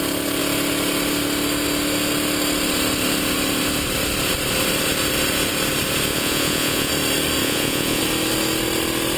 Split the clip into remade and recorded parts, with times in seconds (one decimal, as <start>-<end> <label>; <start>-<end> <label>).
0.0-6.1 recorded; 6.1-6.9 remade; 6.9-7.4 recorded; 7.4-8.0 remade; 8.0-9.2 recorded